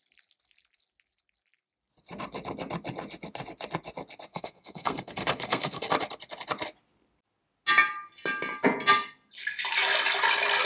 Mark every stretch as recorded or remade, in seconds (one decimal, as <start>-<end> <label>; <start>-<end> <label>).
0.0-4.3 recorded; 4.3-5.9 remade; 5.9-10.7 recorded

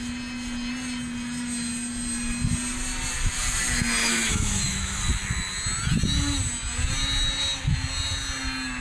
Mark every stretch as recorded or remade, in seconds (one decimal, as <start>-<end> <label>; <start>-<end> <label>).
0.0-4.0 recorded; 4.0-5.0 remade; 5.0-8.8 recorded

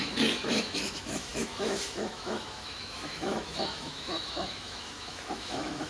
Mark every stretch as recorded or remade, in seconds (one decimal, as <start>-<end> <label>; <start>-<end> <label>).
0.0-5.9 remade

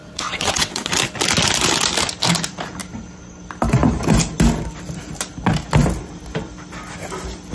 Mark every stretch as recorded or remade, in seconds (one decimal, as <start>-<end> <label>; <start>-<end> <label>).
0.0-0.9 remade; 0.9-7.5 recorded

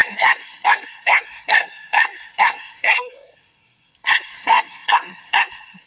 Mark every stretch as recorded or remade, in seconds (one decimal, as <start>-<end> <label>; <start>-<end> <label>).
0.0-5.9 remade

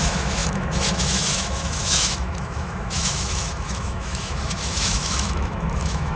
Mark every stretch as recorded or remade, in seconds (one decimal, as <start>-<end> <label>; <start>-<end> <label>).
0.0-6.2 remade

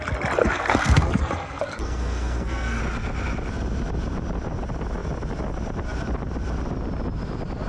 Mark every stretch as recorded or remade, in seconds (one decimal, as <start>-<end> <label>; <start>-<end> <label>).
0.0-0.4 recorded; 0.4-2.8 remade; 2.8-7.7 recorded

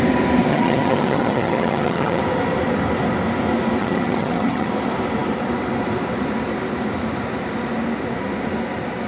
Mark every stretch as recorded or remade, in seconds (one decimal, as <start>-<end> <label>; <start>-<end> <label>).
0.0-0.5 recorded; 0.5-2.2 remade; 2.2-3.8 recorded; 3.8-4.7 remade; 4.7-9.1 recorded